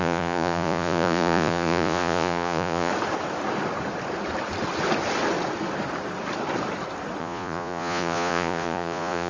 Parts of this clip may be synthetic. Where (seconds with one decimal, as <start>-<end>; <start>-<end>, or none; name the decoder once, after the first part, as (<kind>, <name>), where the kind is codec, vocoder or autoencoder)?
0.0-2.9 (vocoder, Vocos); 7.2-9.3